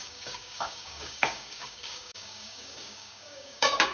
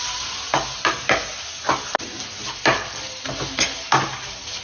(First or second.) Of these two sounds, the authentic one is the second